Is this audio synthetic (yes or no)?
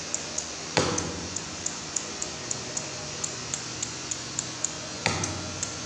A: yes